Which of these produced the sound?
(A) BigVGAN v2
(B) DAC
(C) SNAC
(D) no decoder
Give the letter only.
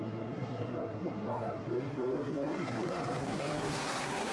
C